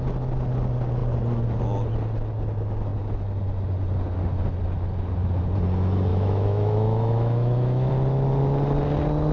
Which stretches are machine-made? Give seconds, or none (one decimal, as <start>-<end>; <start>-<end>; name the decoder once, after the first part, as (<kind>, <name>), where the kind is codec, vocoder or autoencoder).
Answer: 6.1-7.9 (autoencoder, DAC-VAE)

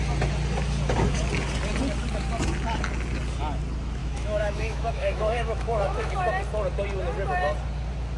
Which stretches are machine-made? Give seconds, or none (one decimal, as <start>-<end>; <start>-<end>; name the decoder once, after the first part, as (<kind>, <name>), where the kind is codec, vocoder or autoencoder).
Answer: 4.0-6.3 (autoencoder, DAC-VAE)

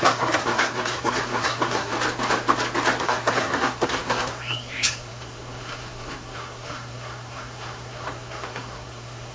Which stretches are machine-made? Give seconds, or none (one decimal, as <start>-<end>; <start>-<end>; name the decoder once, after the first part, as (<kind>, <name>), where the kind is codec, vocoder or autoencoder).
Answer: 0.0-1.9 (codec, SNAC); 3.0-9.3